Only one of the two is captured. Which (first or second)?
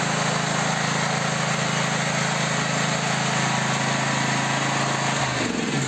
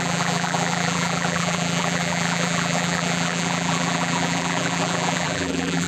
first